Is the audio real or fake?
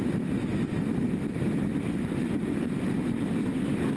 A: real